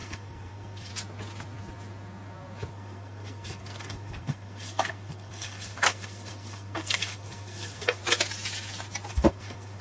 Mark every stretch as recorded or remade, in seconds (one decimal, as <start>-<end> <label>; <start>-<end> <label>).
0.0-0.9 remade; 0.9-2.7 recorded; 2.7-8.0 remade; 8.0-9.1 recorded; 9.1-9.8 remade